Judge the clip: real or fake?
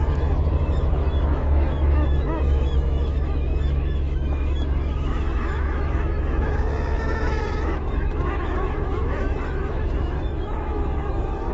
fake